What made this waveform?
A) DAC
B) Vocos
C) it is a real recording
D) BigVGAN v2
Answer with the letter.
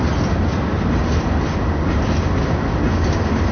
C